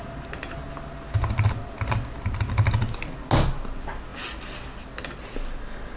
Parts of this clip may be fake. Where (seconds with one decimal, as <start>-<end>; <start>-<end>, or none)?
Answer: none

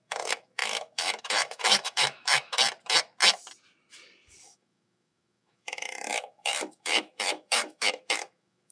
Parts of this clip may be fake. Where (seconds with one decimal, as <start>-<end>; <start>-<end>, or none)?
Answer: 0.0-2.6; 4.4-8.7

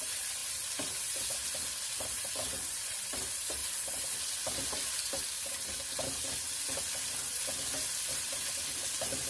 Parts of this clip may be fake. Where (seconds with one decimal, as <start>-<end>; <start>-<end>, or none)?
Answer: 0.0-3.6; 8.1-9.3

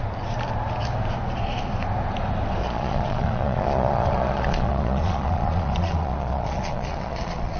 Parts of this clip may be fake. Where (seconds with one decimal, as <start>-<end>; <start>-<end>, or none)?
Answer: 2.6-7.6

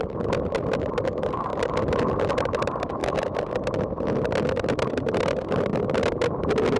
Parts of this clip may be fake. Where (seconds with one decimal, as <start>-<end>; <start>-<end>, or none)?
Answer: none

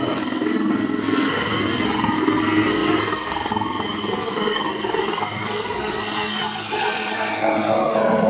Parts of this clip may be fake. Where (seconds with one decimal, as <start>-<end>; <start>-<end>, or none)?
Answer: 0.0-8.3